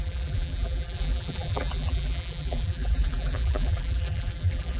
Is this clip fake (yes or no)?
yes